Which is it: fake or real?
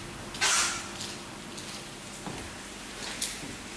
real